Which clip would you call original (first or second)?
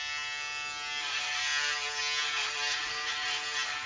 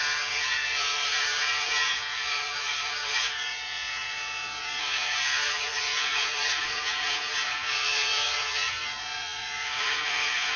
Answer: first